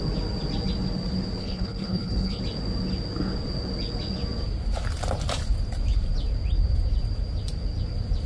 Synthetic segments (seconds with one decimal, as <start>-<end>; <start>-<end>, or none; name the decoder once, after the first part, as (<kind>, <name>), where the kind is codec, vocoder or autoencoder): 1.4-2.4 (codec, HILCodec)